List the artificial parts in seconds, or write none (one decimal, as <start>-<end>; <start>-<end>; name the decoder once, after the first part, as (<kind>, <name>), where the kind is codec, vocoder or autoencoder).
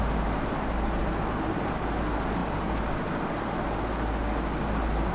none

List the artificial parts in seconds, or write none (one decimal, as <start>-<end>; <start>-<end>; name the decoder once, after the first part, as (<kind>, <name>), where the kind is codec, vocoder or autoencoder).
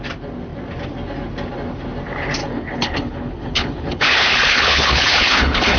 2.4-5.8 (codec, HILCodec)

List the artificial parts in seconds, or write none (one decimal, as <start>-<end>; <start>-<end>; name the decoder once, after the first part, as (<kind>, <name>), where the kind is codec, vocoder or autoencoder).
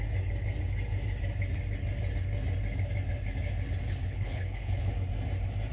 4.0-4.9 (codec, HILCodec)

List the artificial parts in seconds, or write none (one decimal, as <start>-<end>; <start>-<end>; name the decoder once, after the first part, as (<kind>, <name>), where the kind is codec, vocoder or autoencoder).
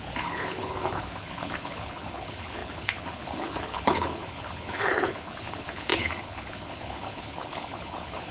0.0-8.3 (codec, HILCodec)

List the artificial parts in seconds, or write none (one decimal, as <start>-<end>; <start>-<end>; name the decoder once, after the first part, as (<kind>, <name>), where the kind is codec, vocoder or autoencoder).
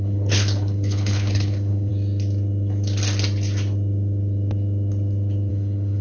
0.0-1.9 (codec, HILCodec); 5.5-6.0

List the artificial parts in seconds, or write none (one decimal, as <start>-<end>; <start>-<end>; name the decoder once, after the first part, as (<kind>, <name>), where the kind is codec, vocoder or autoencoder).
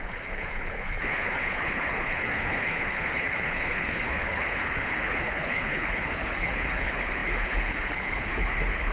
0.0-8.9 (codec, HILCodec)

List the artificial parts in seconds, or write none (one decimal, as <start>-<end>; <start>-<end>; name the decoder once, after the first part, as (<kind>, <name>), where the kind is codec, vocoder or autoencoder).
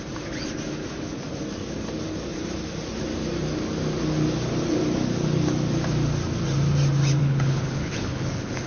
7.2-8.7 (codec, HILCodec)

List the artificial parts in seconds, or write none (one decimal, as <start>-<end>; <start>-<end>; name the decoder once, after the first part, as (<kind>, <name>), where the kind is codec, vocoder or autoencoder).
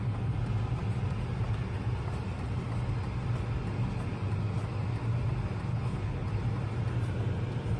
5.7-6.4 (codec, HILCodec)